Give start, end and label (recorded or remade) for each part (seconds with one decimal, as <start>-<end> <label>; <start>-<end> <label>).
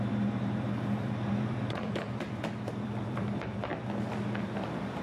0.0-3.7 remade; 3.7-4.4 recorded; 4.4-5.0 remade